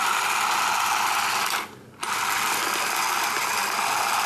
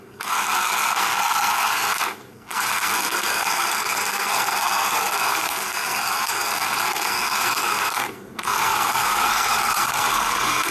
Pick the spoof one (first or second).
second